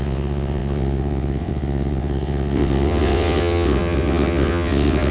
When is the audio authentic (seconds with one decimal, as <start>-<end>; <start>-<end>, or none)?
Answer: none